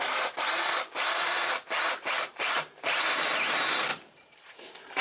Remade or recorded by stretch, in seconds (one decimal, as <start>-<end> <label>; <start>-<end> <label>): 0.0-5.0 remade